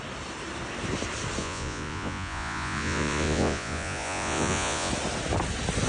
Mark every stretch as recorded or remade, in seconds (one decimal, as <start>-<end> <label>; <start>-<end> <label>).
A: 0.0-1.4 recorded; 1.4-4.9 remade; 4.9-5.9 recorded